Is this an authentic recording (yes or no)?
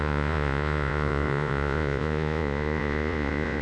no